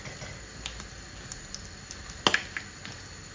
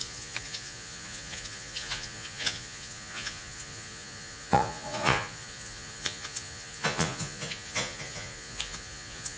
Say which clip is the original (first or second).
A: first